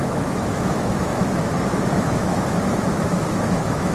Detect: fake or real fake